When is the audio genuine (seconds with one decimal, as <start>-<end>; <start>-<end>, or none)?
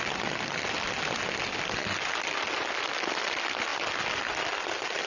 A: 0.0-5.1